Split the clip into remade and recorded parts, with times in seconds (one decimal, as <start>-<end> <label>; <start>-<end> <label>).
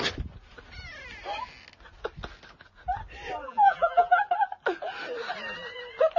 0.0-3.4 recorded; 3.4-4.2 remade; 4.2-6.2 recorded